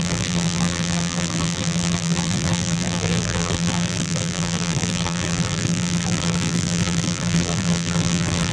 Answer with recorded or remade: remade